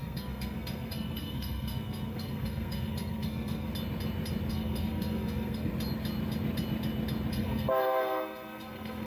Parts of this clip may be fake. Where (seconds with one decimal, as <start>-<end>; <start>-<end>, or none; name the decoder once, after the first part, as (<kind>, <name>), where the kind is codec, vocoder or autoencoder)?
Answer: 0.0-3.7 (codec, SNAC); 4.5-5.7; 7.3-9.1

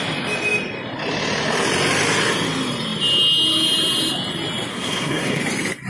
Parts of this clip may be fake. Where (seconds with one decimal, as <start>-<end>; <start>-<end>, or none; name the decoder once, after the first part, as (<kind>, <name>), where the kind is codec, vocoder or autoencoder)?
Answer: 4.7-5.4 (codec, SNAC)

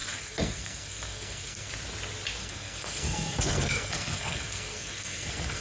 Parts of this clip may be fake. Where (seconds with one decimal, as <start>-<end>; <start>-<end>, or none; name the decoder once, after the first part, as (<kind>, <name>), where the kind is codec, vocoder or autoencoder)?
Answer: 0.0-1.7 (codec, SNAC); 2.4-5.6